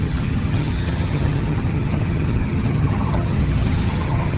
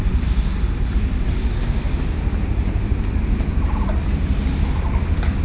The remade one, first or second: first